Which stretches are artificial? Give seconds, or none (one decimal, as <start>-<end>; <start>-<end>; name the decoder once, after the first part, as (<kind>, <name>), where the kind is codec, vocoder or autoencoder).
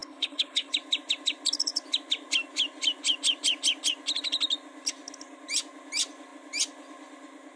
0.0-0.7 (codec, HILCodec)